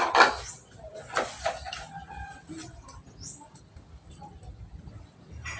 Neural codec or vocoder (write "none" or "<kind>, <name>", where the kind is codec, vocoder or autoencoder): none